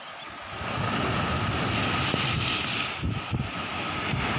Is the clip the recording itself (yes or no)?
yes